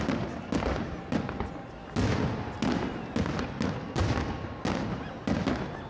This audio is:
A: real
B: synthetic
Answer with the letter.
A